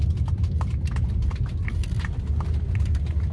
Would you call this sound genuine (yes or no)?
yes